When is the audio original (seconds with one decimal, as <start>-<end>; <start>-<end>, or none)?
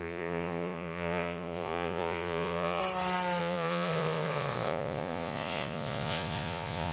2.8-3.4